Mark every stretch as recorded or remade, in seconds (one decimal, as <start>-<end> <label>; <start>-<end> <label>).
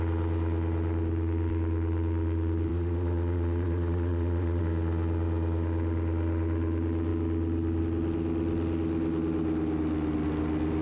0.0-2.7 recorded; 2.7-4.6 remade; 4.6-10.8 recorded